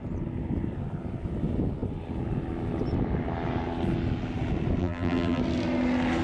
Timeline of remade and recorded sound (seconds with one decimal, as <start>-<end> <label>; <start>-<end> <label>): 0.0-4.8 recorded; 4.8-5.4 remade; 5.4-6.2 recorded